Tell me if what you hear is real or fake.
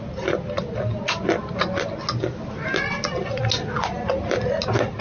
real